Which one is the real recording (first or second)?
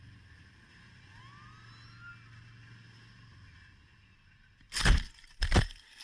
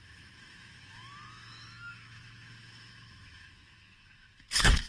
first